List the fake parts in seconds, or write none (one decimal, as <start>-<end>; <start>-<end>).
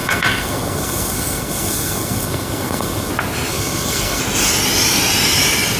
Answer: 0.0-3.1; 3.5-4.2